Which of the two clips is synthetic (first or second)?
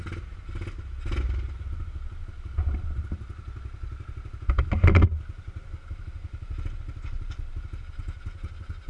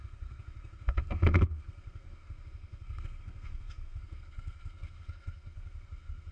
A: second